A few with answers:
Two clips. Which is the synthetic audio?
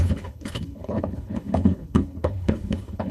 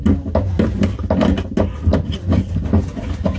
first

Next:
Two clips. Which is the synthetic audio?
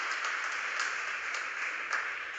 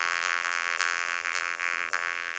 second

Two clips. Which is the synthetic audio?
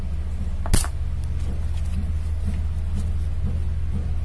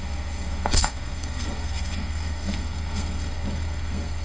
second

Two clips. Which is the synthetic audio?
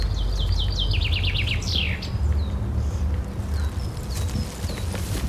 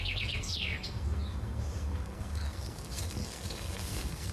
second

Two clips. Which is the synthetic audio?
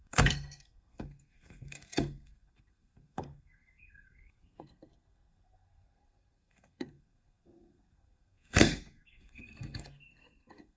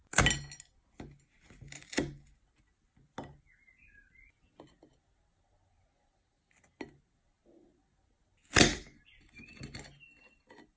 first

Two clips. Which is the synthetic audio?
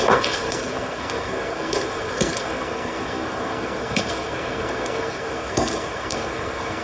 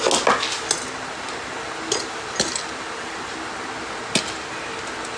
first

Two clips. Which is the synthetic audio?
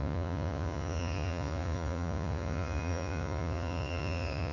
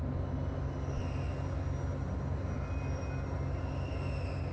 first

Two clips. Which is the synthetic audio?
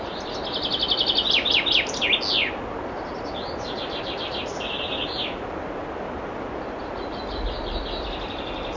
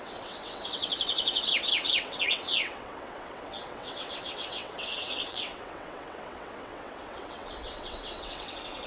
second